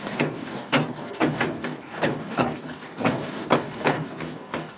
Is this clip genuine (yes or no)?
no